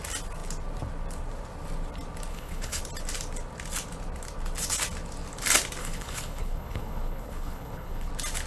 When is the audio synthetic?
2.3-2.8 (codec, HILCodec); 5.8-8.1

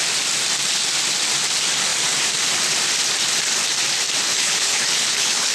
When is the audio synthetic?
4.3-5.5 (codec, HILCodec)

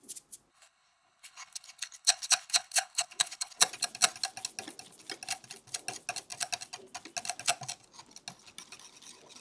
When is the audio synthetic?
0.5-3.6 (codec, HILCodec)

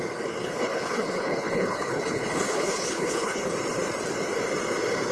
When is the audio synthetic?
0.4-3.5 (codec, HILCodec)

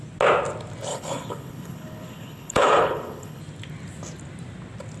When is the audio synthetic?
0.9-3.4 (codec, HILCodec)

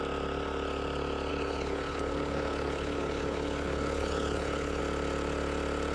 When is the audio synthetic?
1.3-4.8 (codec, HILCodec)

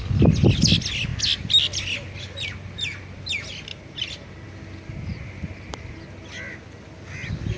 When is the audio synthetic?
none

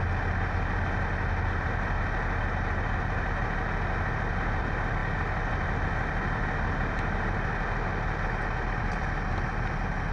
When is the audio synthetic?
none